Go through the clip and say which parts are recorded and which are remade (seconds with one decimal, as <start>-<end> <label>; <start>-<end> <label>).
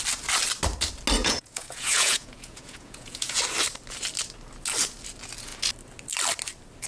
0.0-1.2 recorded; 1.2-3.4 remade; 3.4-6.9 recorded